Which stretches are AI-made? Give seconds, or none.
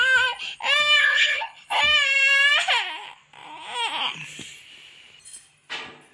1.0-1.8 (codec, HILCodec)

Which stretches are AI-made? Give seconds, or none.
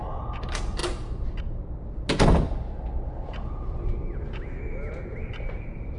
none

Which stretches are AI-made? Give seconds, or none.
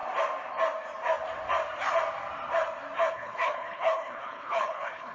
3.1-5.1 (codec, HILCodec)